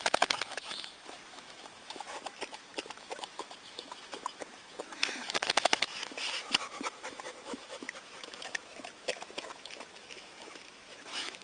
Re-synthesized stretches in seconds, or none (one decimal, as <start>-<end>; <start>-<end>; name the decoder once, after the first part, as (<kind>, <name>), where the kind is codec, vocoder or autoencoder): 0.0-11.4 (autoencoder, DAC-VAE)